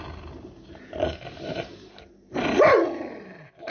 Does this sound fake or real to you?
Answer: real